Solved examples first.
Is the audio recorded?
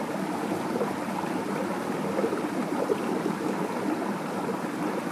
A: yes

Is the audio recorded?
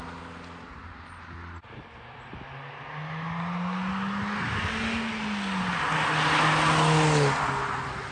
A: yes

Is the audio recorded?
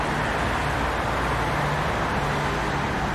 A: yes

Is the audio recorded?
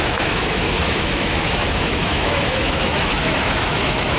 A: no